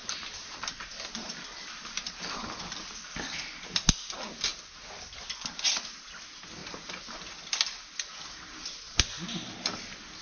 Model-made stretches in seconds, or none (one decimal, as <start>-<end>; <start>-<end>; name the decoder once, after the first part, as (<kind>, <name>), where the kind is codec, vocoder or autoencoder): 0.0-2.8 (vocoder, BigVGAN v2)